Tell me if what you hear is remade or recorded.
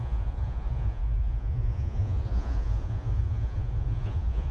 remade